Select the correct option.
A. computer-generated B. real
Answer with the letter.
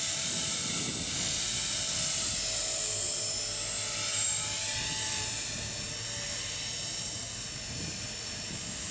B